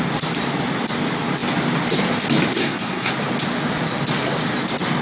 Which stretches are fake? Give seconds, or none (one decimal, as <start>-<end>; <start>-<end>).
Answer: 2.6-3.1